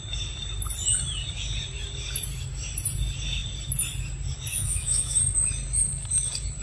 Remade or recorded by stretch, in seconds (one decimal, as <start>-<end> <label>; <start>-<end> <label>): 0.0-4.5 recorded; 4.5-5.2 remade; 5.2-6.6 recorded